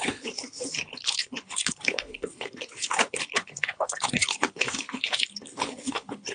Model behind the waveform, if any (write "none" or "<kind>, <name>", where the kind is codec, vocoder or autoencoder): codec, HILCodec